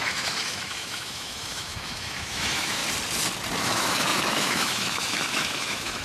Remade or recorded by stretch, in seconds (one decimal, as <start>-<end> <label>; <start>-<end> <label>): 0.0-2.8 remade; 2.8-3.6 recorded; 3.6-6.0 remade